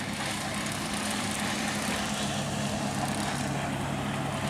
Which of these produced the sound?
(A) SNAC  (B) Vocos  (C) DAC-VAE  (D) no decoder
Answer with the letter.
D